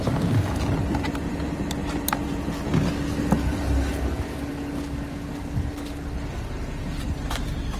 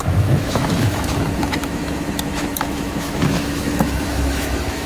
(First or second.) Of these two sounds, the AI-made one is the second